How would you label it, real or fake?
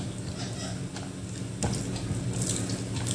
real